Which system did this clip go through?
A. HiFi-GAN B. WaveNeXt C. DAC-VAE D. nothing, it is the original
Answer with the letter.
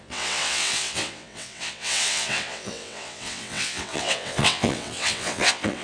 B